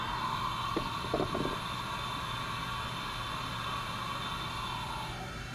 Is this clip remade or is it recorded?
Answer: recorded